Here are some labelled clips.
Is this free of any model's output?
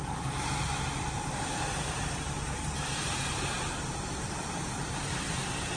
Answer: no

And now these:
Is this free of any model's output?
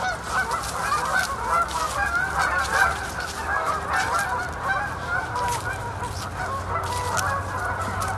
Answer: yes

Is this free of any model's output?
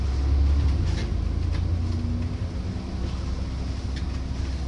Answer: yes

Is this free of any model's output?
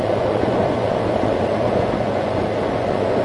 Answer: no